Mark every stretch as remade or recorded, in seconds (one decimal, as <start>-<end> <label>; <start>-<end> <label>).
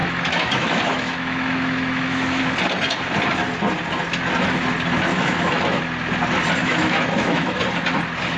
0.0-2.4 remade; 2.4-5.1 recorded; 5.1-5.8 remade; 5.8-6.6 recorded; 6.6-7.6 remade; 7.6-8.4 recorded